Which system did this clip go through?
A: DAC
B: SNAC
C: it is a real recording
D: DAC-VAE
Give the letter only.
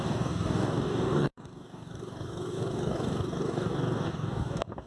A